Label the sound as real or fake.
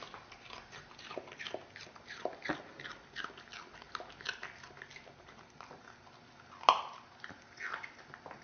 real